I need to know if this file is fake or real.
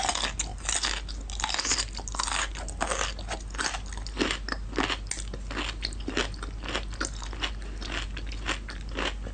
real